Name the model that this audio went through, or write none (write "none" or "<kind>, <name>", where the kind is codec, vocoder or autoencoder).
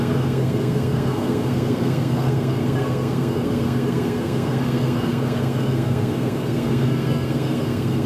codec, SNAC